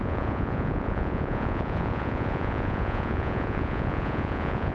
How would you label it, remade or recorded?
remade